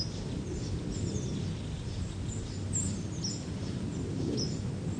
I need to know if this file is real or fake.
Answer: real